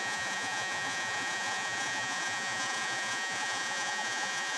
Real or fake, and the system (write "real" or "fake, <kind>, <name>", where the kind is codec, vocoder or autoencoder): fake, vocoder, Vocos